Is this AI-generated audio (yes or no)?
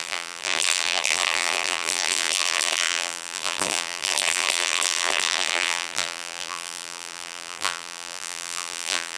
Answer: yes